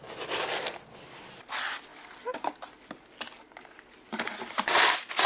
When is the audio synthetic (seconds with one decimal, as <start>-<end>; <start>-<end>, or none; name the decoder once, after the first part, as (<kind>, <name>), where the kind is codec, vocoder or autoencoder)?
none